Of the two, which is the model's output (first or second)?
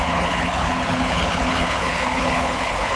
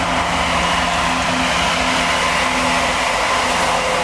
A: first